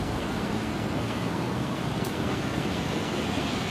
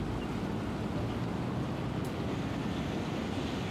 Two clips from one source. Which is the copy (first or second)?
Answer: first